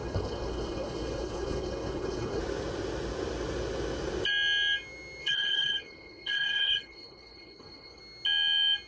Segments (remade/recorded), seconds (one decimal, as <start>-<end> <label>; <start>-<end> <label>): 0.0-2.4 remade; 2.4-5.2 recorded; 5.2-8.0 remade; 8.0-8.9 recorded